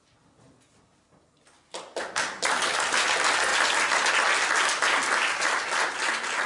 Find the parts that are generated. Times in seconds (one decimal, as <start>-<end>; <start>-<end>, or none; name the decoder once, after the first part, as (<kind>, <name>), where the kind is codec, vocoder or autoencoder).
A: none